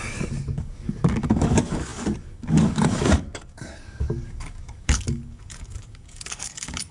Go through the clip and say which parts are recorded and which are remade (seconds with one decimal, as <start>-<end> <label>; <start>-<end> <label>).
0.0-6.9 remade